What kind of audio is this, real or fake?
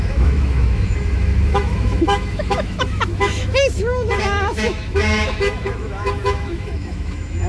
fake